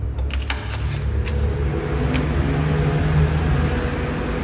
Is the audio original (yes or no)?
yes